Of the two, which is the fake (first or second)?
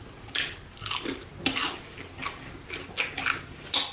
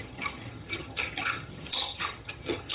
second